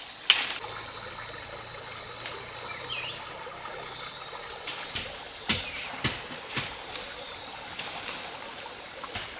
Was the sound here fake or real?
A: real